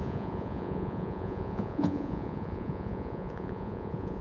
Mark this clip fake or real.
fake